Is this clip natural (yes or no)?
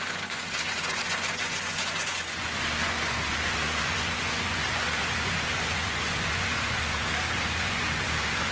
no